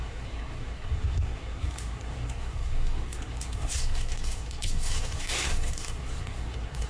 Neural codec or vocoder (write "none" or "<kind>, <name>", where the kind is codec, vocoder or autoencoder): codec, SNAC